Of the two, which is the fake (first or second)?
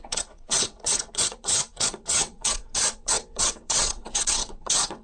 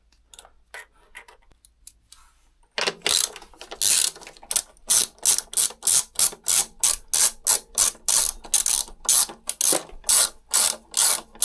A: first